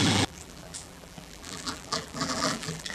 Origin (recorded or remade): remade